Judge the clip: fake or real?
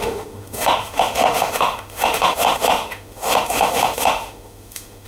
fake